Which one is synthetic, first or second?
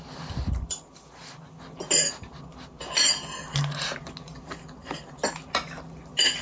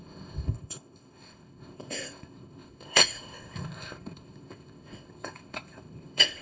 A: second